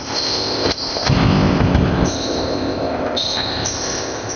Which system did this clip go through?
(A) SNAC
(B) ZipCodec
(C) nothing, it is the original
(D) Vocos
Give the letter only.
B